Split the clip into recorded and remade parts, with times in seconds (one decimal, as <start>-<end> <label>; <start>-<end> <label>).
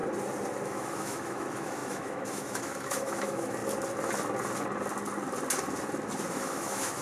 0.0-0.6 recorded; 0.6-3.6 remade; 3.6-6.3 recorded; 6.3-7.0 remade